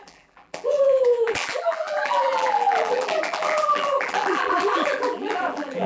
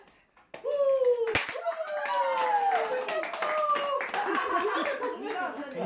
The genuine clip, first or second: second